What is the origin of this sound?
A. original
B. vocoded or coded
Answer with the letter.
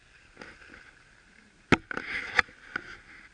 A